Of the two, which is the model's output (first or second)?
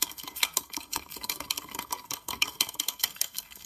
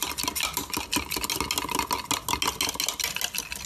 first